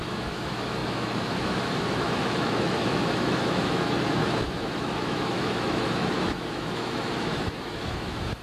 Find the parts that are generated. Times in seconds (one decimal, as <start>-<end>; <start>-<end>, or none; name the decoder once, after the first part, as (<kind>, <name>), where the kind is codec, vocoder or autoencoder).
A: 0.0-8.4 (autoencoder, DAC-VAE)